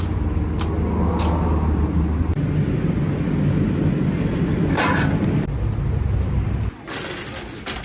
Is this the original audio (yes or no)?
yes